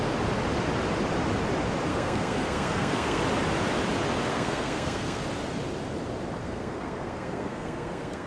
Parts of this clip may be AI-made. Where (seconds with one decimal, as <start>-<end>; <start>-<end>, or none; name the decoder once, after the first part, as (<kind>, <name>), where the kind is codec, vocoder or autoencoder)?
1.9-3.2 (codec, SNAC); 4.3-5.2; 6.4-8.3